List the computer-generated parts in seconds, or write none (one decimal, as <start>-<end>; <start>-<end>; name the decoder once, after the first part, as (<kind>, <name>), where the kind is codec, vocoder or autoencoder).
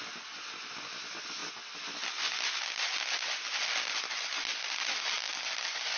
none